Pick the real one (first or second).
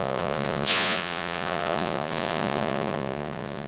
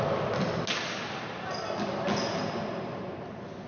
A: second